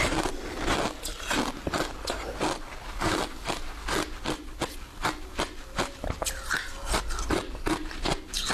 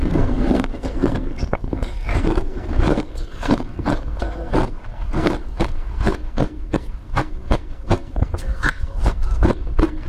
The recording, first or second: first